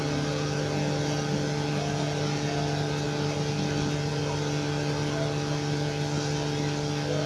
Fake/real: real